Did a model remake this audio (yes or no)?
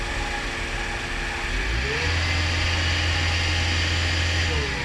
no